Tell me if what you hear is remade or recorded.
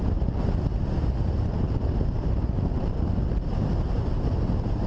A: recorded